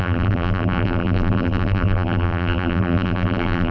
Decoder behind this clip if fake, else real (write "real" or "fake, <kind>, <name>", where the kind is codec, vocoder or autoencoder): fake, vocoder, BigVGAN v2